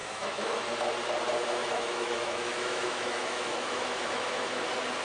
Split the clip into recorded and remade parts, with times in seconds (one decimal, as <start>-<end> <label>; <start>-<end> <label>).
0.0-0.6 remade; 0.6-1.6 recorded; 1.6-4.6 remade; 4.6-5.0 recorded

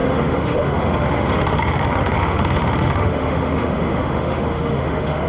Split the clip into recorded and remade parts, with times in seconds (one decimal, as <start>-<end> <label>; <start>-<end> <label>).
0.0-5.3 remade

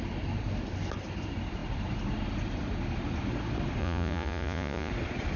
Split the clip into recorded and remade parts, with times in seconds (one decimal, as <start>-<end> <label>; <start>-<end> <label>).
0.0-3.8 recorded; 3.8-4.9 remade; 4.9-5.4 recorded

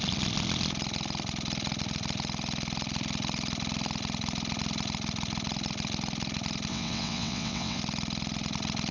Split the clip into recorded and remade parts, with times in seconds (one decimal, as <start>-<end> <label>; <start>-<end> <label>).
0.0-6.7 recorded; 6.7-7.8 remade; 7.8-8.9 recorded

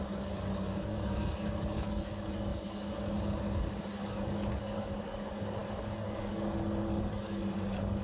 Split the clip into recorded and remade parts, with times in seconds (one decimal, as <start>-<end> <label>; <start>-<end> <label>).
0.0-8.0 remade

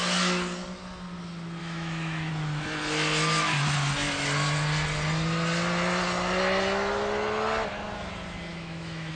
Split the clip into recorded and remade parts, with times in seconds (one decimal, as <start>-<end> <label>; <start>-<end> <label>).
0.0-1.6 recorded; 1.6-2.3 remade; 2.3-8.5 recorded; 8.5-9.1 remade

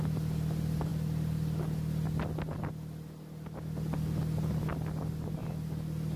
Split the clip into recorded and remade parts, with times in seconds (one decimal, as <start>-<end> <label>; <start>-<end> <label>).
0.0-6.2 recorded